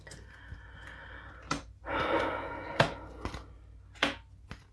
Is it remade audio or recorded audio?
recorded